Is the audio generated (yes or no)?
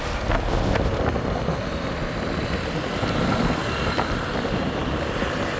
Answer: no